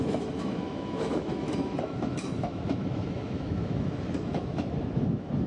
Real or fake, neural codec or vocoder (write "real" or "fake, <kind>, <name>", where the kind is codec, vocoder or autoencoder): fake, autoencoder, DAC-VAE